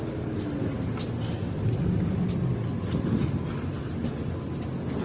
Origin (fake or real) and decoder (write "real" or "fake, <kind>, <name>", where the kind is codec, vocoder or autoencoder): real